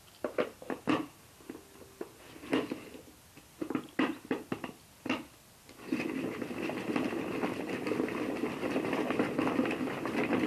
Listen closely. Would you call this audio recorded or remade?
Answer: recorded